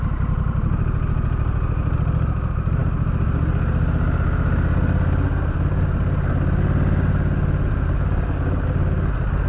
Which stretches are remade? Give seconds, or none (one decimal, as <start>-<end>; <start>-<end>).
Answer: none